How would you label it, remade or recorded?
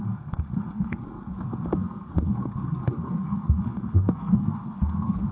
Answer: remade